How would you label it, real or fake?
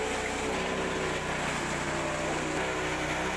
real